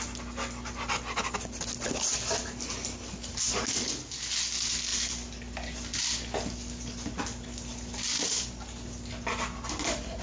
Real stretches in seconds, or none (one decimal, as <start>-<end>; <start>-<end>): 0.0-10.2